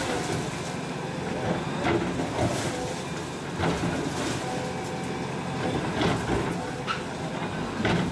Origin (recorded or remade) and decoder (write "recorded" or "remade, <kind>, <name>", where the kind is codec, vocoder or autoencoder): recorded